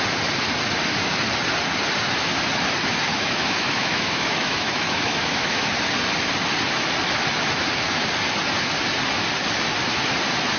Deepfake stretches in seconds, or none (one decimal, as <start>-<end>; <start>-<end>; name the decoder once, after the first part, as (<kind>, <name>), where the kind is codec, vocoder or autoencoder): 3.1-5.7 (autoencoder, DAC-VAE)